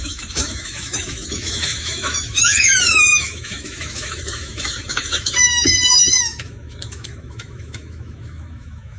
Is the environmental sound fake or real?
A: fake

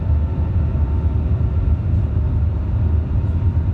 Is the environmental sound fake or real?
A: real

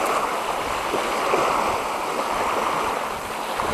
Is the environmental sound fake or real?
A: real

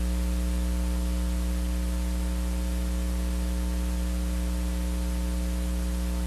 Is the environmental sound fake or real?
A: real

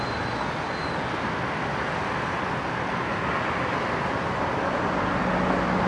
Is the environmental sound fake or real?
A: real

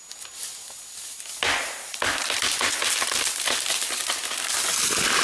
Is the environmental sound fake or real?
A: real